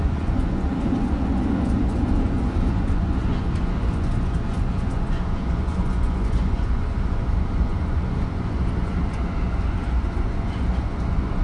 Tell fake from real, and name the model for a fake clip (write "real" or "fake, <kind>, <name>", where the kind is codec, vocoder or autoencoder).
fake, vocoder, Vocos